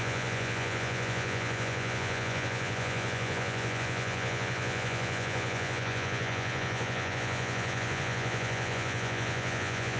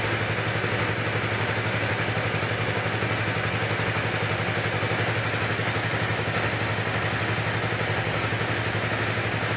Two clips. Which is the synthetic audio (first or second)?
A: first